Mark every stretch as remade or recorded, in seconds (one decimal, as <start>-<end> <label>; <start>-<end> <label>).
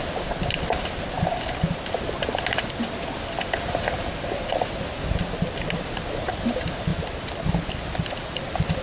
0.0-8.8 recorded